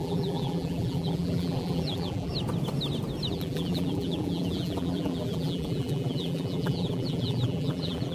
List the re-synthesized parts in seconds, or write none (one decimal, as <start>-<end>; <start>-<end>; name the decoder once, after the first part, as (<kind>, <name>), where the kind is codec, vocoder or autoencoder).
0.0-2.3 (vocoder, BigVGAN v2); 3.3-8.1